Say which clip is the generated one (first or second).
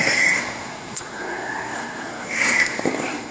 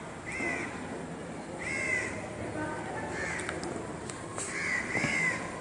first